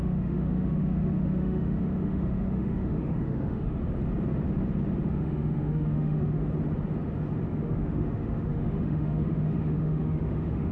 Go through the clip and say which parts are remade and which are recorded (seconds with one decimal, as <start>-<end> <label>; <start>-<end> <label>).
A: 0.0-3.8 remade; 3.8-5.1 recorded; 5.1-6.4 remade; 6.4-7.6 recorded; 7.6-10.7 remade